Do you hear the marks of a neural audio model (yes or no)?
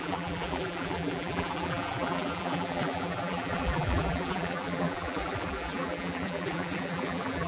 yes